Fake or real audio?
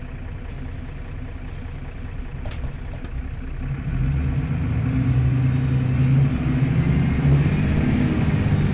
real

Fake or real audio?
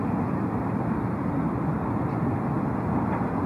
real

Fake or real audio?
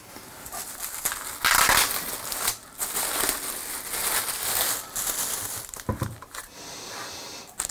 real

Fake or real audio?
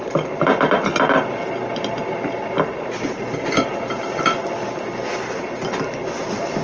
real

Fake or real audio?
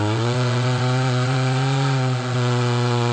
fake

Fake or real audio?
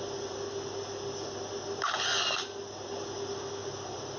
real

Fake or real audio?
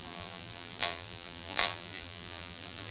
fake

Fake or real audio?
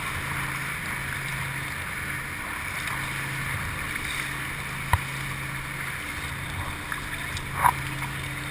real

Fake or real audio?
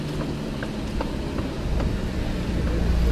real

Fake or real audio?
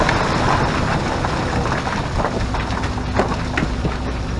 real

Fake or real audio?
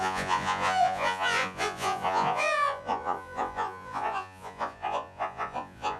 fake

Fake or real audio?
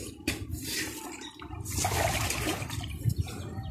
fake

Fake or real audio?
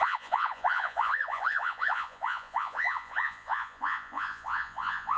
fake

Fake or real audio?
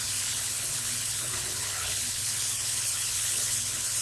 fake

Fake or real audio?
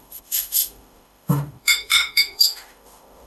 fake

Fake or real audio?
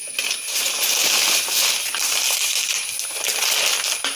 real